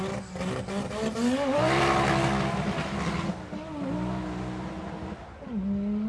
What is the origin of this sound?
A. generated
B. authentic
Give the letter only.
B